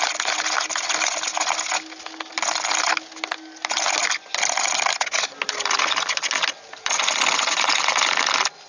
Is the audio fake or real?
real